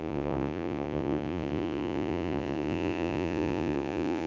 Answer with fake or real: fake